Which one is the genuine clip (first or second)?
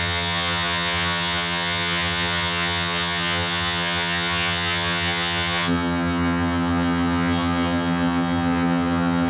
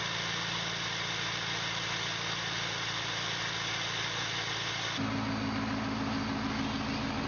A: second